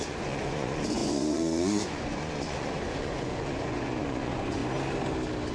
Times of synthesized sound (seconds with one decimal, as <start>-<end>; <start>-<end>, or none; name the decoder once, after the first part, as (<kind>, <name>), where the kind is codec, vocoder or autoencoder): 0.0-4.6 (vocoder, Vocos)